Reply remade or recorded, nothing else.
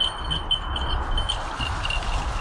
recorded